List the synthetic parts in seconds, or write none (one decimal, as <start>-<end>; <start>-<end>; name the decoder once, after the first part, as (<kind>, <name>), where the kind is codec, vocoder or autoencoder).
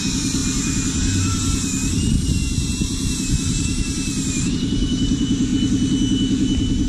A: 0.0-5.5 (vocoder, BigVGAN v2)